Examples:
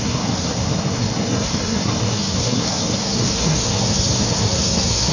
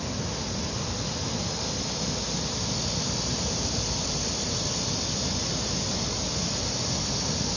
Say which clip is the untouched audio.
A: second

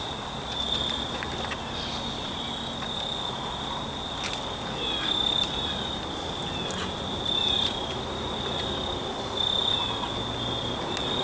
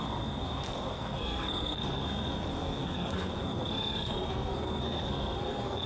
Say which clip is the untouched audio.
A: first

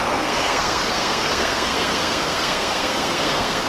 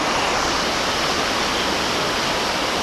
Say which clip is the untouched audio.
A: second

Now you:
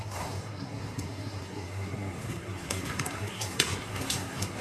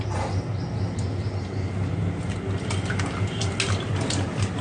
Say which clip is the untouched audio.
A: second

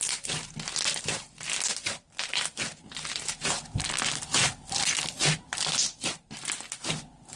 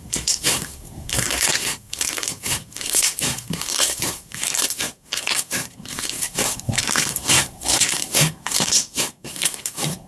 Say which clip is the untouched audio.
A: first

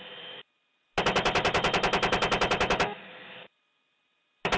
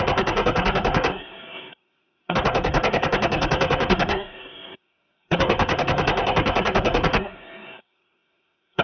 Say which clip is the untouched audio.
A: first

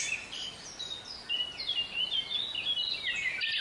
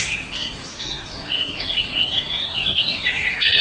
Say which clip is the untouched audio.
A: first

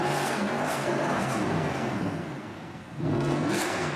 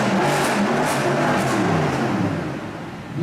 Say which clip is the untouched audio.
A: second